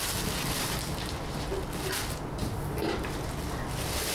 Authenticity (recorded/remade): recorded